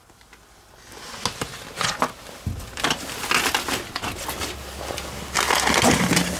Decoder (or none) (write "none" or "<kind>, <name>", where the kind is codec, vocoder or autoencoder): none